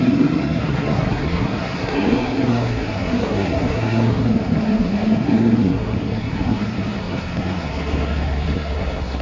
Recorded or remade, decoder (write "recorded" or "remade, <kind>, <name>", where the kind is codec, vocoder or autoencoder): remade, codec, SNAC